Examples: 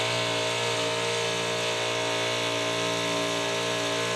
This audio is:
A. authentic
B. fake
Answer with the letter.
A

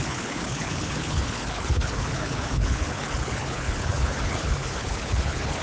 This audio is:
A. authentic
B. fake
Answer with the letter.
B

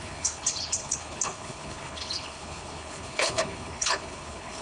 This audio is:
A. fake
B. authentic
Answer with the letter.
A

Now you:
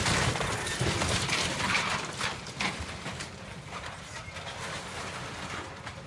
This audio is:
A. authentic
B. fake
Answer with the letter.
A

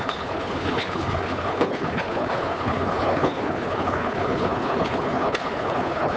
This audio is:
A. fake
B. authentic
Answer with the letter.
A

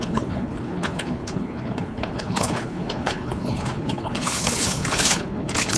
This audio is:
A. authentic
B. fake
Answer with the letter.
B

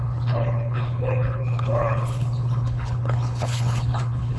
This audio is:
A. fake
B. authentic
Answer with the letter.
A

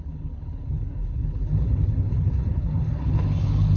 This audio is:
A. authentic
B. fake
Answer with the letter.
B